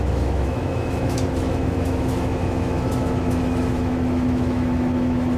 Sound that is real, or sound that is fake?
fake